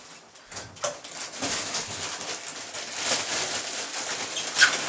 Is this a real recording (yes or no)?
yes